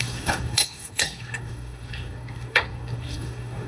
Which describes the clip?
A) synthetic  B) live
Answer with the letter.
A